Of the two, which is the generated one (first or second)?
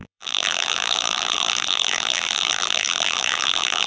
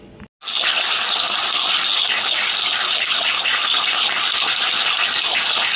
first